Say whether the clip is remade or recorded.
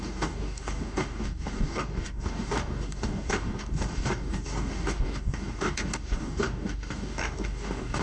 remade